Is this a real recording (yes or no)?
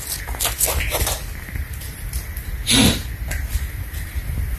yes